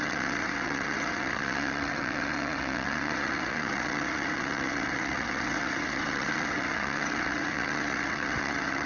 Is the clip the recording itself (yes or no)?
no